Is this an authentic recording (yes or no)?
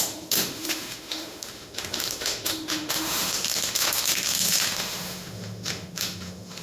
no